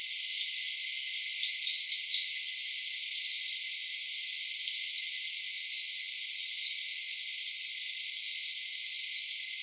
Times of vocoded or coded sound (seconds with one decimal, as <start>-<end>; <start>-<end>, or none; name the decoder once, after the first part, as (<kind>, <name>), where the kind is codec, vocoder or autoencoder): none